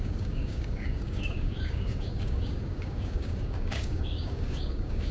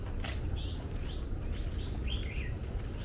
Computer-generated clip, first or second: first